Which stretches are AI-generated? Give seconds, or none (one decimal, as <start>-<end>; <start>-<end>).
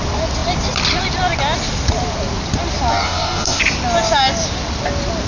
2.9-3.6